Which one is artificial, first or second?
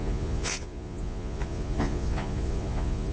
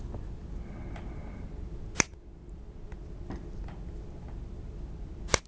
first